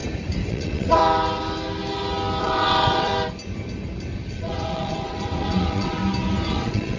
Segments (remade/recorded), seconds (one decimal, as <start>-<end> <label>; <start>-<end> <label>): 0.0-0.5 recorded; 0.5-1.0 remade; 1.0-2.4 recorded; 2.4-3.1 remade; 3.1-4.3 recorded; 4.3-6.0 remade; 6.0-6.5 recorded; 6.5-7.0 remade